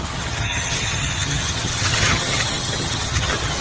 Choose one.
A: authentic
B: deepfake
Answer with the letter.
B